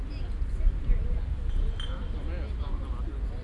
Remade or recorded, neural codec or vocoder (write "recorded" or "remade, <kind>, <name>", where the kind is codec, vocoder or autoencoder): recorded